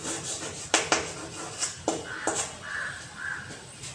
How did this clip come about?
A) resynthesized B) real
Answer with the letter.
B